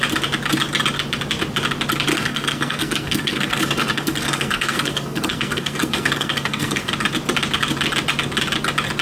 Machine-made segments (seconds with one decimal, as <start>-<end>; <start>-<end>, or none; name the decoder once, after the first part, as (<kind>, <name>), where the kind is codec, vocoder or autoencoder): 2.1-6.9 (codec, SNAC)